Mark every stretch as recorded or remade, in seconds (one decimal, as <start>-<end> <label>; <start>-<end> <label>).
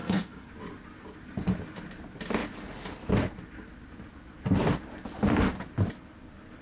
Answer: 0.0-0.5 remade; 0.5-6.6 recorded